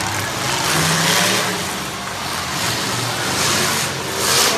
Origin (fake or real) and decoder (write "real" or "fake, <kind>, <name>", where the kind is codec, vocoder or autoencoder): real